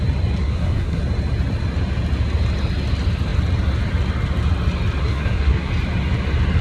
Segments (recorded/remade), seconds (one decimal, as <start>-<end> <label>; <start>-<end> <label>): 0.0-0.4 recorded; 0.4-1.0 remade; 1.0-5.0 recorded; 5.0-5.7 remade; 5.7-6.6 recorded